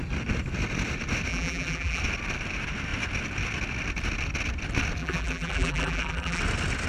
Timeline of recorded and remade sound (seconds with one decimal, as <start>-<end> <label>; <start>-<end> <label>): 0.0-1.3 recorded; 1.3-2.0 remade; 2.0-5.0 recorded; 5.0-6.4 remade; 6.4-6.9 recorded